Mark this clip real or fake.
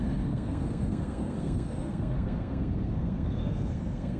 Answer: fake